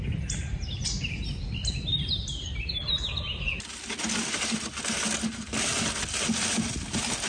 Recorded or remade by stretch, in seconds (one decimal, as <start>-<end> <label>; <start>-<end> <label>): 0.0-7.3 recorded